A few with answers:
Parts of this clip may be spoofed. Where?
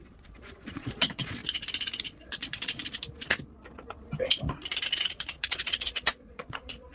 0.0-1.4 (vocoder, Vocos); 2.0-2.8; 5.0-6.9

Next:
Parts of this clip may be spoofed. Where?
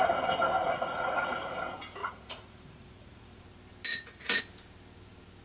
0.6-1.6 (vocoder, Vocos); 2.0-3.4; 3.9-4.4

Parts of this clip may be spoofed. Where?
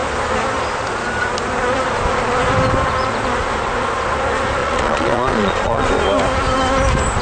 4.6-5.9 (vocoder, Vocos)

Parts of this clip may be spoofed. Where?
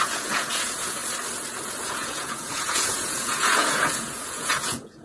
0.0-1.0 (vocoder, Vocos); 1.8-5.0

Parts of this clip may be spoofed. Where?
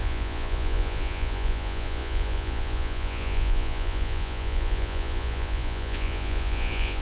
0.0-7.0 (vocoder, Vocos)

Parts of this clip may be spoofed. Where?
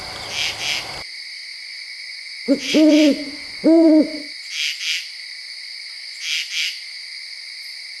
1.5-4.0 (vocoder, Vocos)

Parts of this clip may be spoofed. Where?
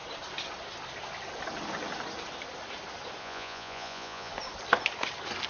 3.2-4.3 (vocoder, Vocos)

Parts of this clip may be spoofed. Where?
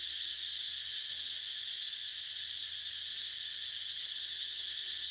none